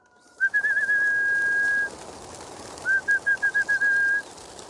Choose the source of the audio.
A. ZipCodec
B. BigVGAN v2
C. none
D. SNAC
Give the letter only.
C